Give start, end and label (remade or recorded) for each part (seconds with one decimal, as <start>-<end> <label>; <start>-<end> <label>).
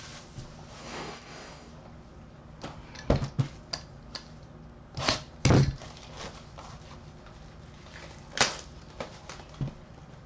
0.0-0.8 recorded; 0.8-1.7 remade; 1.7-10.3 recorded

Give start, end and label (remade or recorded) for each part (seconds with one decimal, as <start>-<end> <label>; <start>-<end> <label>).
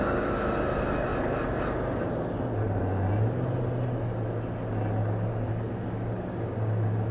0.0-1.1 remade; 1.1-5.3 recorded; 5.3-7.1 remade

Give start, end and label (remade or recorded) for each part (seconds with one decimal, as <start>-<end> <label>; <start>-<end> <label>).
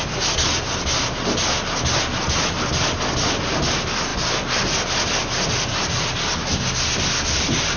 0.0-7.8 recorded